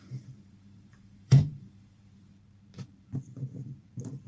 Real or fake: fake